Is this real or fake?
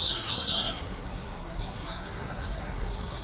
fake